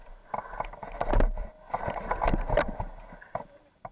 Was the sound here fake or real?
real